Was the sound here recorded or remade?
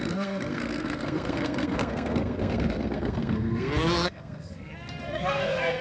remade